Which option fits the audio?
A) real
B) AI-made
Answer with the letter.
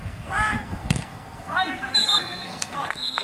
B